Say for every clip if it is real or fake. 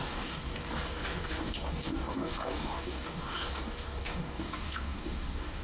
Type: fake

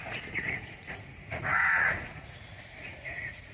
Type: fake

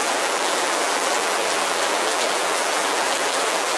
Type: fake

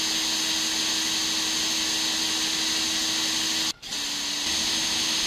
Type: real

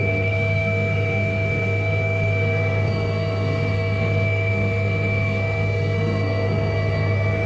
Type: fake